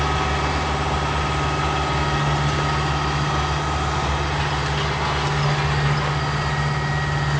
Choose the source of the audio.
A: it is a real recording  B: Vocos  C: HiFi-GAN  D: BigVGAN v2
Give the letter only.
A